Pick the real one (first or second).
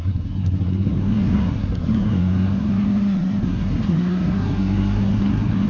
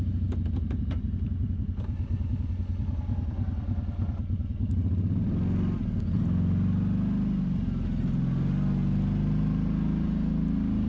second